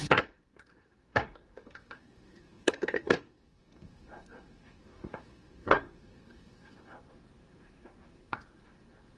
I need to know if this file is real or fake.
fake